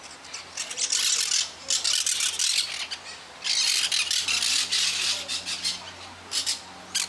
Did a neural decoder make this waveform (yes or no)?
no